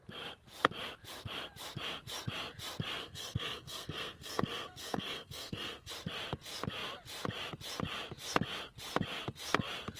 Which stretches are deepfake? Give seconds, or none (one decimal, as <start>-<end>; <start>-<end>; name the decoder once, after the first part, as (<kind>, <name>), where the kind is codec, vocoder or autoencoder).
3.0-5.9 (codec, SNAC)